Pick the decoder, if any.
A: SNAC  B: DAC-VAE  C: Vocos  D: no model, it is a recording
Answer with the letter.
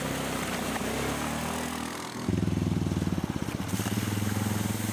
D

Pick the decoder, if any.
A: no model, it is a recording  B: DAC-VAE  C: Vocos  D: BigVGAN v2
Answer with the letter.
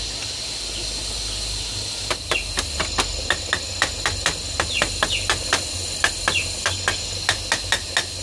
A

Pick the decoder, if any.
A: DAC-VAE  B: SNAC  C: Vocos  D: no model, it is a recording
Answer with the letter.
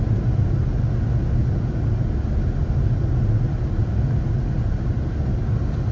D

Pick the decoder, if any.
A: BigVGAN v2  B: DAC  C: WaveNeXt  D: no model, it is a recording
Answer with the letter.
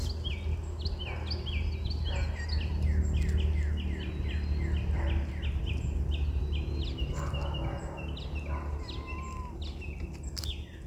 D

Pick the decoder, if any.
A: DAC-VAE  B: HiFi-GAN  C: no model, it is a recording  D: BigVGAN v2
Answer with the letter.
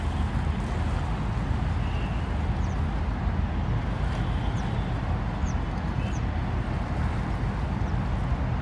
C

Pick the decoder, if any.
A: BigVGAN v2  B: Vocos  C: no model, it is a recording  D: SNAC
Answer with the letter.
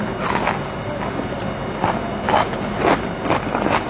C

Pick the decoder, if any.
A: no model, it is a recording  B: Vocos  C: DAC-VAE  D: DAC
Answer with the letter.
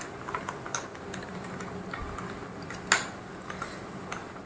A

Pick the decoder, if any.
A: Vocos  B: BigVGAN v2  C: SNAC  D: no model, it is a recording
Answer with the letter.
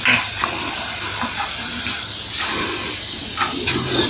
D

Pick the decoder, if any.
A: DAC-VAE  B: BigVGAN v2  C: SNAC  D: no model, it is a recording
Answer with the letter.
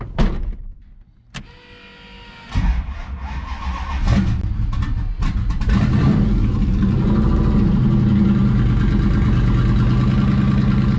D